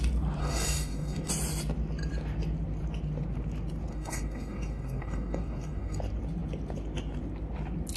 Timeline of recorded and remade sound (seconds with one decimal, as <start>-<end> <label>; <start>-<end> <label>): 0.0-0.4 recorded; 0.4-1.3 remade; 1.3-3.9 recorded; 3.9-6.0 remade; 6.0-8.0 recorded